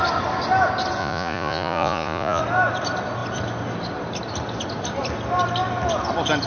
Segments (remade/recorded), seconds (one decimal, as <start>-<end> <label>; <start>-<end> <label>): 0.0-1.0 recorded; 1.0-2.4 remade; 2.4-6.5 recorded